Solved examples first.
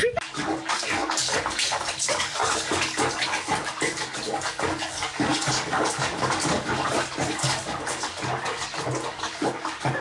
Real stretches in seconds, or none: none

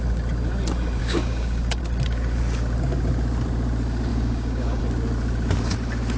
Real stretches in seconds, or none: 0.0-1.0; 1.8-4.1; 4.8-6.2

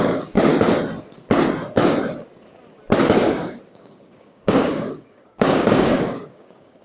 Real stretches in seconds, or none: 0.5-3.2